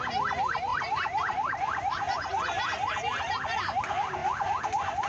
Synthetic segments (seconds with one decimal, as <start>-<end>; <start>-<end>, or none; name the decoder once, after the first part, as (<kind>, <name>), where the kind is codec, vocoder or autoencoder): 0.7-3.8 (vocoder, BigVGAN v2)